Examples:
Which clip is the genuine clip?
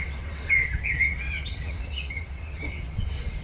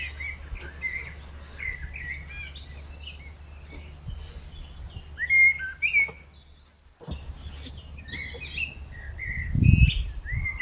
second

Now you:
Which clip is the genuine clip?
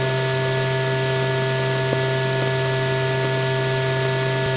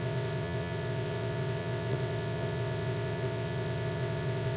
first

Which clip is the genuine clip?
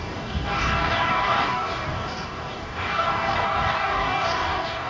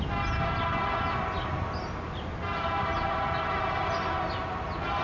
second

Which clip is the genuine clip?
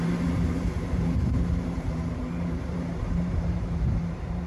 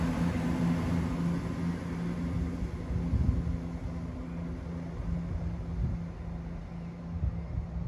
second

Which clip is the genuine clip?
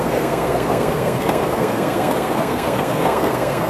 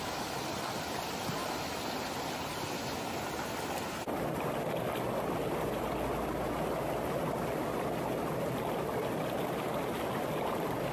second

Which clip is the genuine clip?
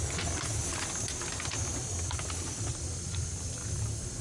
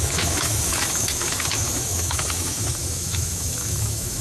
first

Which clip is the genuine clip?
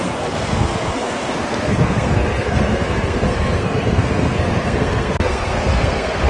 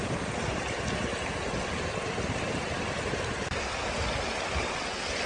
second